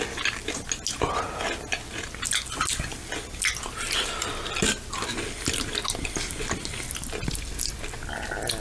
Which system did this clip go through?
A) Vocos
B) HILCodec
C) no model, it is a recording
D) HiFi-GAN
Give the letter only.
C